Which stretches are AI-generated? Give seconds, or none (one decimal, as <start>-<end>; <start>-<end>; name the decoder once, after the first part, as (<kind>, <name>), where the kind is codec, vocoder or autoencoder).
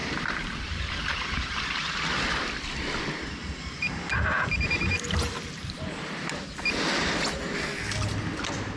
0.0-1.7 (vocoder, BigVGAN v2); 3.4-6.1